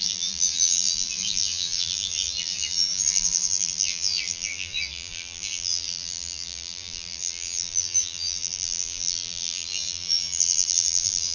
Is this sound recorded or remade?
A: remade